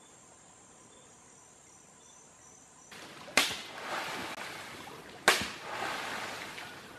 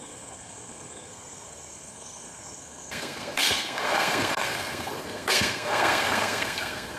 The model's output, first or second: second